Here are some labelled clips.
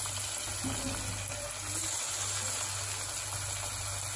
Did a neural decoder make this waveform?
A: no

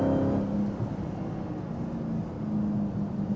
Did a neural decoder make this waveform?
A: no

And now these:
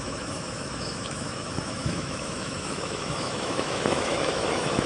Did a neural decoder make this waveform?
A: yes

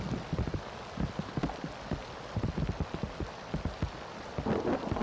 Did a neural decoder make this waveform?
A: no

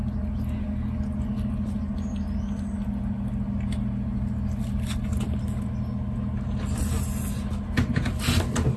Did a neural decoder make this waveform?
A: no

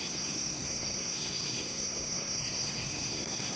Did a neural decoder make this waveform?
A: yes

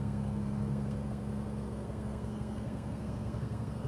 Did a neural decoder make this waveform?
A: yes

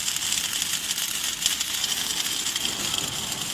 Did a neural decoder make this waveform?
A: no